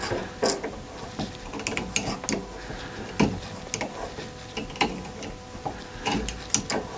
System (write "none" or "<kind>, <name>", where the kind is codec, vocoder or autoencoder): none